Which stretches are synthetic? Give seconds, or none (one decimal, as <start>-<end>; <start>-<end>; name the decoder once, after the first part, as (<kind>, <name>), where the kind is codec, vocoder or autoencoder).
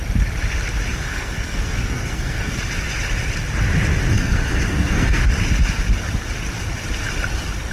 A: 0.9-2.6 (codec, SNAC); 4.1-5.2